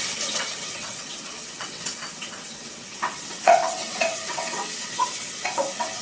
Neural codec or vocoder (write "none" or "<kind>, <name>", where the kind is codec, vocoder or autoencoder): vocoder, WaveNeXt